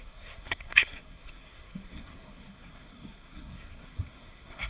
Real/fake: fake